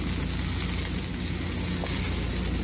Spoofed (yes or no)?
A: no